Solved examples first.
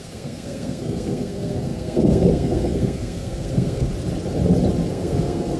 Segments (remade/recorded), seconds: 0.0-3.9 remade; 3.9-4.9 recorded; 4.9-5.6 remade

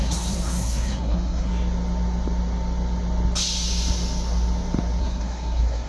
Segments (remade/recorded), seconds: 0.0-1.5 remade; 1.5-5.0 recorded; 5.0-5.9 remade

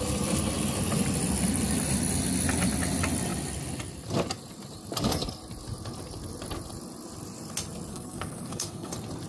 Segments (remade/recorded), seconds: 0.0-7.9 recorded; 7.9-8.9 remade; 8.9-9.3 recorded

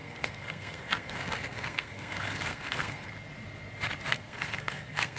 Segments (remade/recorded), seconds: 0.0-3.1 remade; 3.1-4.1 recorded; 4.1-5.2 remade

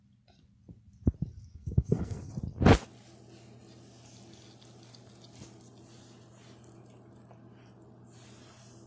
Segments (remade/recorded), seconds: 0.0-1.5 recorded; 1.5-2.3 remade; 2.3-8.9 recorded

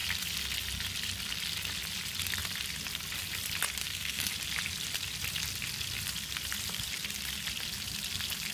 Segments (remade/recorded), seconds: 0.0-3.8 recorded; 3.8-4.3 remade; 4.3-8.5 recorded